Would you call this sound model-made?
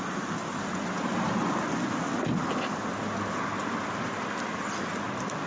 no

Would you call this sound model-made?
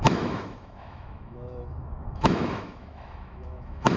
yes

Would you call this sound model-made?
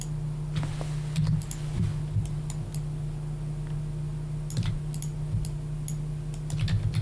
no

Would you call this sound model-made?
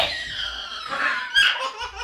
yes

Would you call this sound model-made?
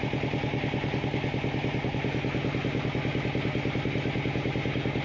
no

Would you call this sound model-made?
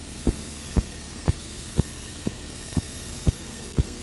yes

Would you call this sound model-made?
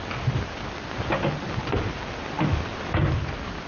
no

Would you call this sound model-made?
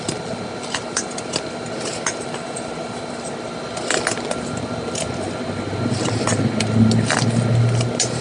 no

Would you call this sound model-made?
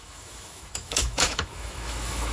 yes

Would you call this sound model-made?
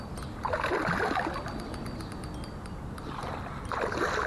no